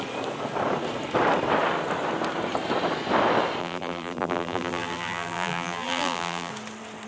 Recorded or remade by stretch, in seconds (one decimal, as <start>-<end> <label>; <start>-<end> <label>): 0.0-3.6 recorded; 3.6-6.5 remade; 6.5-7.1 recorded